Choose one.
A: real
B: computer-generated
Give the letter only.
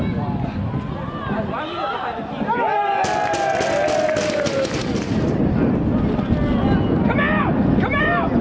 A